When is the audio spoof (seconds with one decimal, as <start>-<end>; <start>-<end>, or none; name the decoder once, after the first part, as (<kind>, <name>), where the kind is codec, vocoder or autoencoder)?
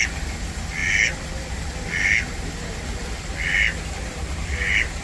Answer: none